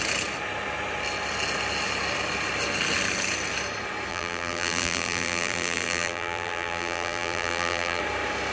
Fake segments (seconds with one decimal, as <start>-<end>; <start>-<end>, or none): 4.1-8.0